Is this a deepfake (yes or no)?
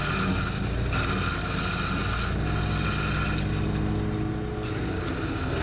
no